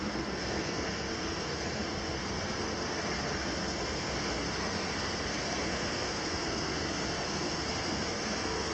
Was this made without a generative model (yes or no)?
no